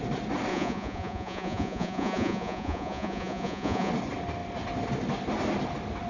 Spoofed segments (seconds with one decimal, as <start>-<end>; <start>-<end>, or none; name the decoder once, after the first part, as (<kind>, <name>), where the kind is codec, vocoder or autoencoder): 0.5-3.9 (vocoder, Vocos)

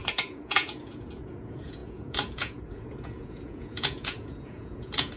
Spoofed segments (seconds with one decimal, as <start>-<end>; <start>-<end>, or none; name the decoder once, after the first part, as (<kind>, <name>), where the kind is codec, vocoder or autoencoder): 0.0-5.2 (vocoder, Vocos)

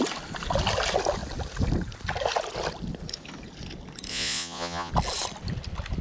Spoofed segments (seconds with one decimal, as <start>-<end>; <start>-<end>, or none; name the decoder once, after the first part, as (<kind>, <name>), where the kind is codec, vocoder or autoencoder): 4.1-4.9 (vocoder, Vocos)

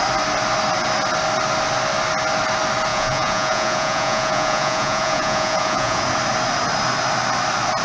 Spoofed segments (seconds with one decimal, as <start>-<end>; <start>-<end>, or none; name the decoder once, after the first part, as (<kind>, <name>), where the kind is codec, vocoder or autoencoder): 2.9-6.0 (vocoder, Vocos)